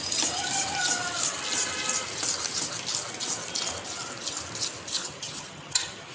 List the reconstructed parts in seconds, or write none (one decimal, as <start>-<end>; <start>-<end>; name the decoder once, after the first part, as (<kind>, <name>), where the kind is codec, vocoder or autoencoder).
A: 5.0-6.1 (vocoder, HiFi-GAN)